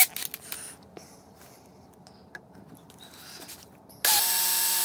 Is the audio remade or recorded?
recorded